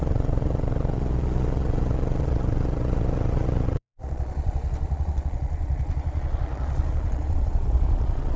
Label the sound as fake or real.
fake